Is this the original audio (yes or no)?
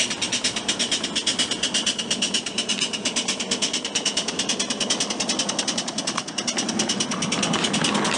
yes